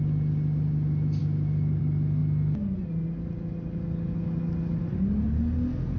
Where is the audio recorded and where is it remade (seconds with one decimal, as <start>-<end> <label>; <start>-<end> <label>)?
0.0-1.2 recorded; 1.2-1.8 remade; 1.8-6.0 recorded